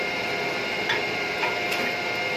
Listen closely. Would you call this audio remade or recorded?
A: recorded